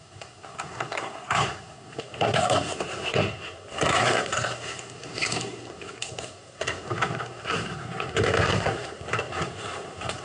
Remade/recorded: remade